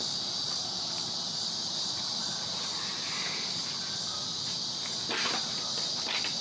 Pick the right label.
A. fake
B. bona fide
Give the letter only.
B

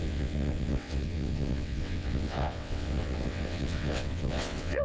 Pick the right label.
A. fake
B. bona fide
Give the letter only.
A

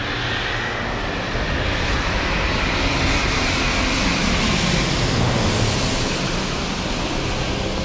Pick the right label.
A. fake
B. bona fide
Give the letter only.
B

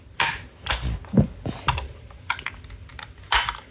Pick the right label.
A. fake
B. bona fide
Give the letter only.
B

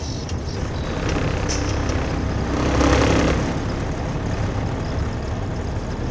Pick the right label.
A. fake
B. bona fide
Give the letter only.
B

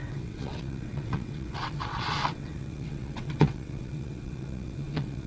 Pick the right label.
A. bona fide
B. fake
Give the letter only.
B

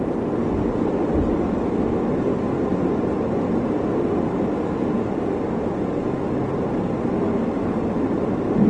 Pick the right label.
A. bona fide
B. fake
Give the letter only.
A